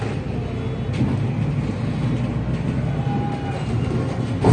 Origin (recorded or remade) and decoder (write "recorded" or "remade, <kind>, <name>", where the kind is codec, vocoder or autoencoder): recorded